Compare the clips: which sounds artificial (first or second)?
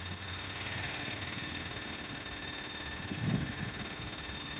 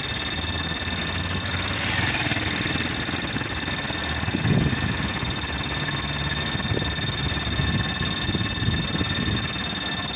first